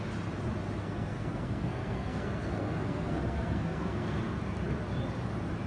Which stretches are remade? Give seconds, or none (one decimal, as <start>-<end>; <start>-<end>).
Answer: 0.8-4.2